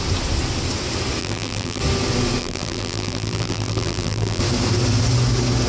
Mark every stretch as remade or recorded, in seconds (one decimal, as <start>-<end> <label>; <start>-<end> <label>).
0.0-1.2 recorded; 1.2-1.8 remade; 1.8-2.4 recorded; 2.4-4.4 remade; 4.4-5.7 recorded